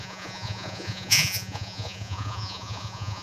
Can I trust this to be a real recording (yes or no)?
no